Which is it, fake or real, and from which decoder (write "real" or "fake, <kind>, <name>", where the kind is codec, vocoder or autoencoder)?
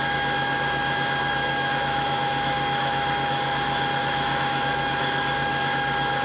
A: fake, autoencoder, DAC-VAE